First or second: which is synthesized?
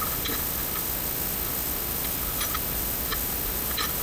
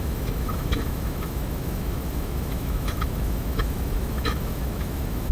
second